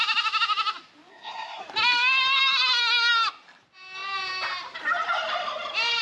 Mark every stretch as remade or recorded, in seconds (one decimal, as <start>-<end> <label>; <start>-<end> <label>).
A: 0.0-1.1 recorded; 1.1-1.6 remade; 1.6-6.0 recorded